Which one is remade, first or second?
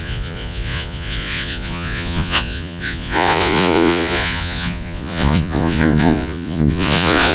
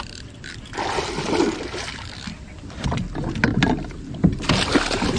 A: first